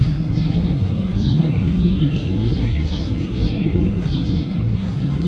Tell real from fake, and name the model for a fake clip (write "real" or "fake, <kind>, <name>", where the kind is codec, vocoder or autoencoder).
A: fake, codec, SNAC